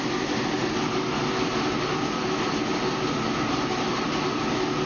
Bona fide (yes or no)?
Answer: yes